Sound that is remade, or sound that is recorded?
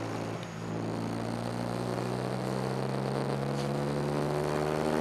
recorded